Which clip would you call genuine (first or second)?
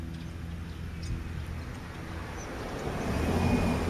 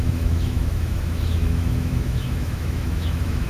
first